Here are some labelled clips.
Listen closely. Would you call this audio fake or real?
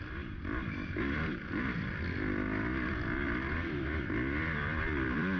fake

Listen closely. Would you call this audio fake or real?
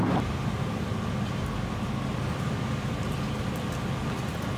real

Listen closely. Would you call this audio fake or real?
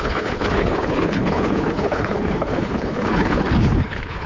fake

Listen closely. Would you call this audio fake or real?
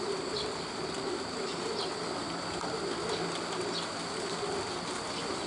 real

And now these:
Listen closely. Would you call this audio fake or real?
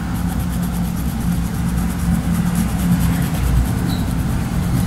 real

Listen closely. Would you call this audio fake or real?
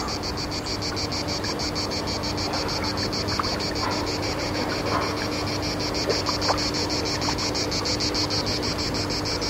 real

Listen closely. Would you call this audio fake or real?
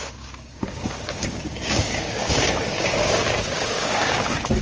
fake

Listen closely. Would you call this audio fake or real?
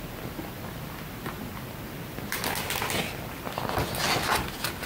real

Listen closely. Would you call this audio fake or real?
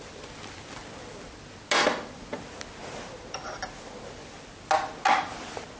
real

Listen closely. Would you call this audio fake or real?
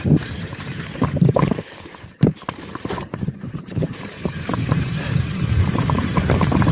fake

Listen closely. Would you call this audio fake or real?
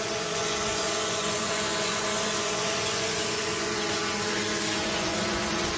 fake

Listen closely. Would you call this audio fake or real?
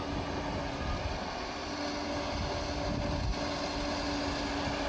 real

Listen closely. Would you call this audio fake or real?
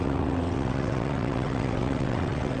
fake